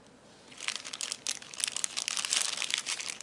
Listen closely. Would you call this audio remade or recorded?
recorded